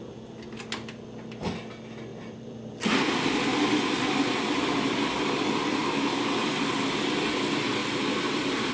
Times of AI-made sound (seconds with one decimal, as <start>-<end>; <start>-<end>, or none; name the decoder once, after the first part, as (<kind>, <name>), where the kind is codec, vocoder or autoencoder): 2.1-2.7 (vocoder, BigVGAN v2); 3.5-4.4; 5.8-6.7; 7.8-8.7

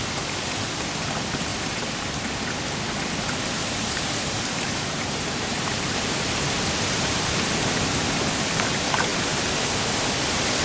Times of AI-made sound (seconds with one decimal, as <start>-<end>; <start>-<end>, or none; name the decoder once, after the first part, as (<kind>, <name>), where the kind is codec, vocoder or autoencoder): 1.5-2.4 (vocoder, BigVGAN v2); 3.6-7.5; 9.1-9.7

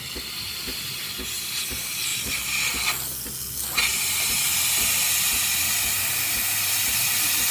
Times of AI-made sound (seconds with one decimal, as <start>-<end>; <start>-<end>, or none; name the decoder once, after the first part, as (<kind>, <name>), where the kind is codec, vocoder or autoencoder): 2.1-2.7 (vocoder, BigVGAN v2)

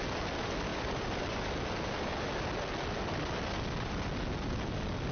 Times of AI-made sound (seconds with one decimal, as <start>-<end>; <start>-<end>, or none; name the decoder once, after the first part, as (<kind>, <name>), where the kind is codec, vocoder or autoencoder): 0.7-1.3 (vocoder, BigVGAN v2)